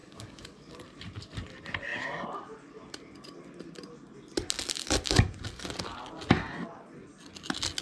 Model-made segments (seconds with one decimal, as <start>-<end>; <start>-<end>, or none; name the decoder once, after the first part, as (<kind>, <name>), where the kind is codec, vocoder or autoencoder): 0.0-0.7 (codec, DAC)